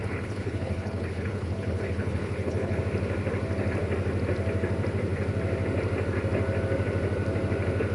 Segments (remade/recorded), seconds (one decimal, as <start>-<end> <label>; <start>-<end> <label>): 0.0-2.8 remade; 2.8-7.9 recorded